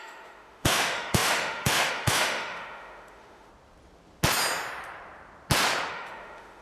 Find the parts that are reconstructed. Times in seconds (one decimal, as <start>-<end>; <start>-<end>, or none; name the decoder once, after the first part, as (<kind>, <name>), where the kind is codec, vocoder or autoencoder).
0.0-3.5 (autoencoder, DAC-VAE); 5.9-6.6